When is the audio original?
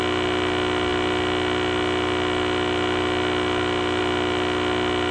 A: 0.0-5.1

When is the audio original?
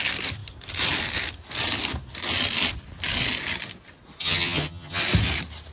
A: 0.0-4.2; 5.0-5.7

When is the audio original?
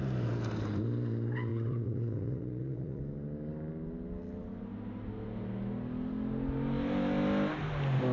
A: 0.0-1.5; 3.0-8.1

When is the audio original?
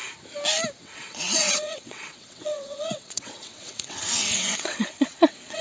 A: 0.0-0.8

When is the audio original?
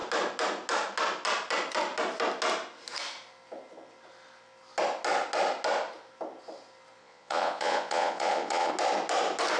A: 0.0-7.0; 8.7-9.6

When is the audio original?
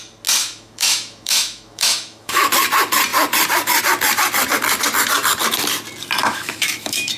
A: 0.0-0.4; 2.5-6.2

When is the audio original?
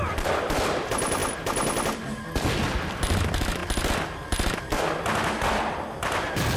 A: 1.2-3.0; 3.6-4.6